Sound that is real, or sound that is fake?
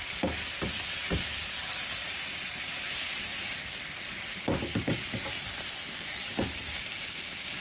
real